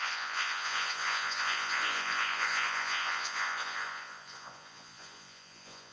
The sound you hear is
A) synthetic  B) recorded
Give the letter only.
A